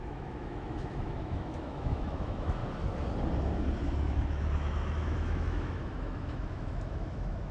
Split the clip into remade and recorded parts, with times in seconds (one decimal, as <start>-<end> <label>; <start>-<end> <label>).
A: 0.0-2.6 remade; 2.6-3.8 recorded; 3.8-7.5 remade